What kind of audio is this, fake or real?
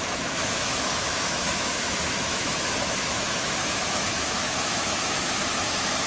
fake